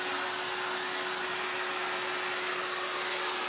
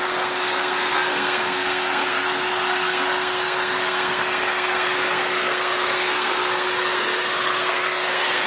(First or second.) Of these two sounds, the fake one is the second